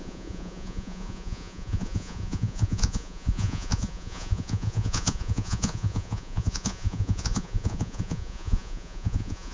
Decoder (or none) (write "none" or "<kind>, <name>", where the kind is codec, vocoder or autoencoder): vocoder, Vocos